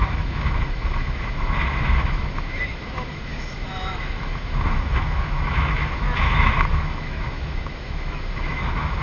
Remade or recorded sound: remade